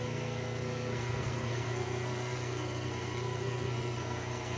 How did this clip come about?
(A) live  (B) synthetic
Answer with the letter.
B